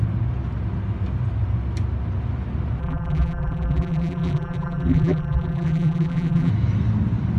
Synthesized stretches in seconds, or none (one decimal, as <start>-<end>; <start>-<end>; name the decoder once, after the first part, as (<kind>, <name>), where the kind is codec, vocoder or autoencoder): 2.8-6.5 (vocoder, BigVGAN v2)